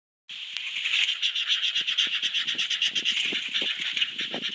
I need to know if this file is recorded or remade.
recorded